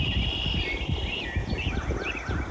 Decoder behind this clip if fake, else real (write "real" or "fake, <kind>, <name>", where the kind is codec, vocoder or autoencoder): real